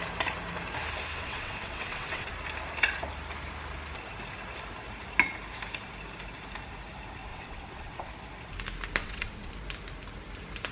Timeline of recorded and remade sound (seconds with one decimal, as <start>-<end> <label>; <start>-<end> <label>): 0.0-1.1 recorded; 1.1-2.3 remade; 2.3-7.3 recorded; 7.3-8.1 remade; 8.1-9.0 recorded; 9.0-9.5 remade; 9.5-10.7 recorded